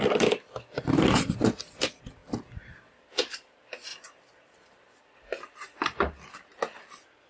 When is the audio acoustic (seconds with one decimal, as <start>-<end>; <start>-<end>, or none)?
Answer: none